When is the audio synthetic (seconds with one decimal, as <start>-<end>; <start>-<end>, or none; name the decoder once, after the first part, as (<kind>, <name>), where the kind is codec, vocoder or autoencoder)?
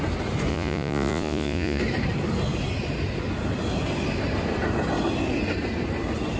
0.5-1.8 (vocoder, Vocos)